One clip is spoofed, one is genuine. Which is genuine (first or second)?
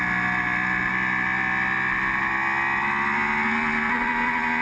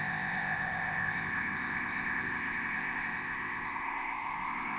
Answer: first